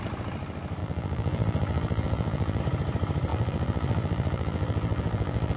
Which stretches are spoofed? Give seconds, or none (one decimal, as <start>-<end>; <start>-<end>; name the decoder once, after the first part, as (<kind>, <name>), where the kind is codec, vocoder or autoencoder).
0.8-2.6 (vocoder, BigVGAN v2); 3.3-5.6